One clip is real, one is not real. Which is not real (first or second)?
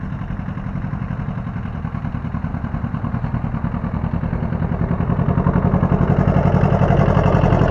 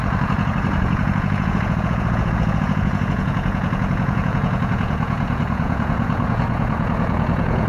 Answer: second